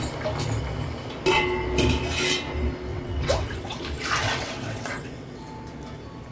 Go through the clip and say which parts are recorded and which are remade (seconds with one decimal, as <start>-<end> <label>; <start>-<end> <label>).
0.0-2.9 recorded; 2.9-3.8 remade; 3.8-4.2 recorded; 4.2-5.4 remade; 5.4-6.3 recorded